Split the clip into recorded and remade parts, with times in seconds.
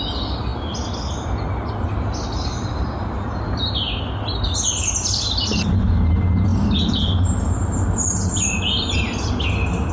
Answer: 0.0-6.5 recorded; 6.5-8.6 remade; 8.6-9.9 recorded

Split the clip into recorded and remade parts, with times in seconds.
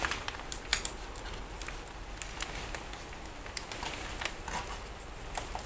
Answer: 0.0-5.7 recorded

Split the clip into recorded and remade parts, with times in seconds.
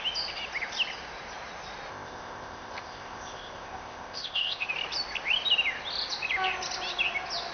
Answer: 0.0-1.9 recorded; 1.9-4.7 remade; 4.7-7.5 recorded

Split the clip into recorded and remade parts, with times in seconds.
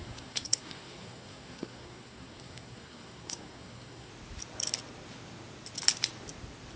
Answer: 0.0-4.1 remade; 4.1-6.8 recorded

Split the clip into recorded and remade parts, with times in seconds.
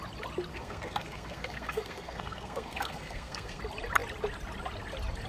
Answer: 0.0-0.5 recorded; 0.5-3.6 remade; 3.6-5.3 recorded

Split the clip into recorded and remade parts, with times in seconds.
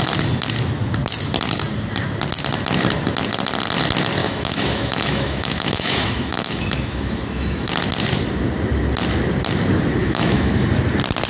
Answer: 0.0-4.2 recorded; 4.2-7.7 remade; 7.7-10.0 recorded; 10.0-10.5 remade; 10.5-11.3 recorded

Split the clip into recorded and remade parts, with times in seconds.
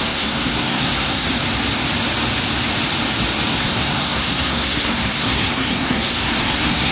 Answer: 0.0-1.3 remade; 1.3-3.5 recorded; 3.5-6.9 remade